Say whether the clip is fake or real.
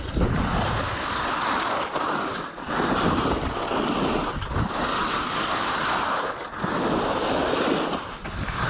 real